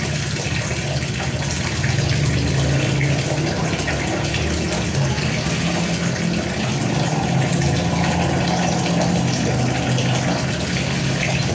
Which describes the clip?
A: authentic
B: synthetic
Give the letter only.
A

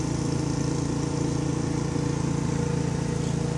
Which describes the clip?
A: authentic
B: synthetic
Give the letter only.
A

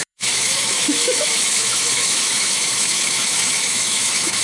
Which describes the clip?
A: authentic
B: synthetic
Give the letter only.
B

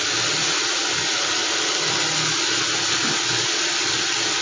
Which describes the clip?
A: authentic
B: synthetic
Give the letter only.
A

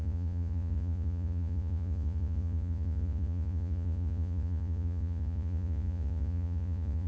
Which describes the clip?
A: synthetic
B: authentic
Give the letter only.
A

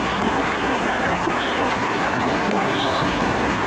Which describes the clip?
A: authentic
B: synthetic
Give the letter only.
B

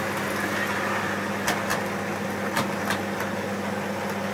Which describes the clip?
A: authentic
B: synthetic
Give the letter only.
A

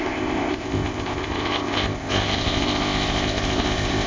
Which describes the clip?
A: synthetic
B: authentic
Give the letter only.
A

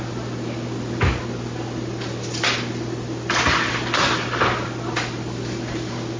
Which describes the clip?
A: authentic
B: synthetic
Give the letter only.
A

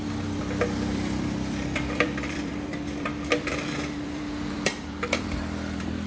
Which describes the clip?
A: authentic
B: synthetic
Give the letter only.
B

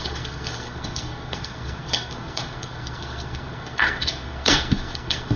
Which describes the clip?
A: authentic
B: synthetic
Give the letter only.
B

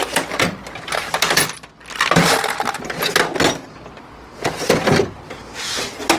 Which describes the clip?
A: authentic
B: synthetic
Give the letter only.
A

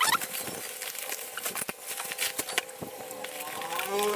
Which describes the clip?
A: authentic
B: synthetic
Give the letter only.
A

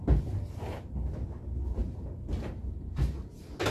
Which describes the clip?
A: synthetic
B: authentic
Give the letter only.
B